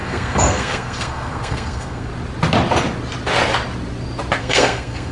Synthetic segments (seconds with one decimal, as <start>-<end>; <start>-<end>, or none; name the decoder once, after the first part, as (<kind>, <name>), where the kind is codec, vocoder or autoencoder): 0.0-2.1 (codec, SNAC); 4.4-5.1